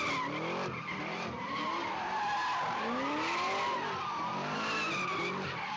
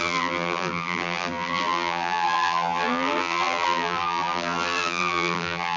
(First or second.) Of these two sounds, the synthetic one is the second